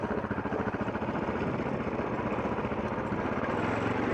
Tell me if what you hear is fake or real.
real